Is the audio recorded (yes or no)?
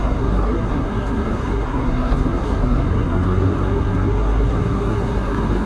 no